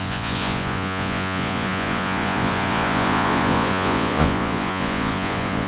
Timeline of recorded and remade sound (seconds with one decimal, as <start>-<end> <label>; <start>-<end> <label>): 0.0-5.7 remade